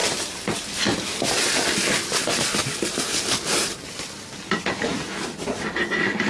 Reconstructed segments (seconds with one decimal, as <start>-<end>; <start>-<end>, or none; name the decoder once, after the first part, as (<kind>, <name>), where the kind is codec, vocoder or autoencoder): 0.0-1.4 (vocoder, BigVGAN v2); 2.6-3.9